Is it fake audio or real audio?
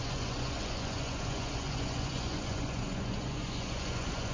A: fake